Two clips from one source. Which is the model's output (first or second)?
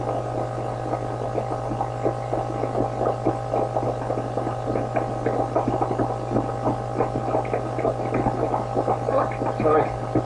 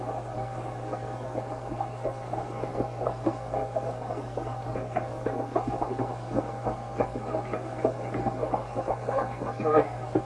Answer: second